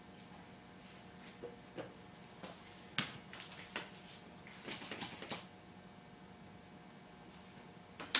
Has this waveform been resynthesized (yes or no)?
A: no